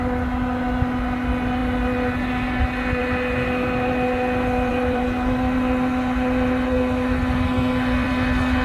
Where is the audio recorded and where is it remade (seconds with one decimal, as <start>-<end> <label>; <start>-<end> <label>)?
0.0-3.0 recorded; 3.0-3.9 remade; 3.9-4.7 recorded; 4.7-8.1 remade; 8.1-8.6 recorded